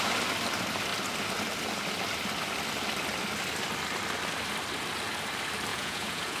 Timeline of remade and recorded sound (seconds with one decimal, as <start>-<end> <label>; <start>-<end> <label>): 0.0-5.7 recorded; 5.7-6.4 remade